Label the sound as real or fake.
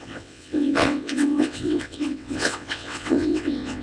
fake